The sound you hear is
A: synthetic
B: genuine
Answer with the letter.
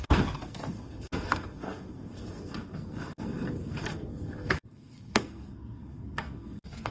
A